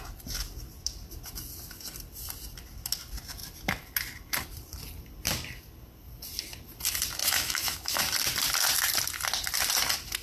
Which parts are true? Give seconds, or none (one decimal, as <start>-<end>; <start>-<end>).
0.0-7.2; 8.0-10.2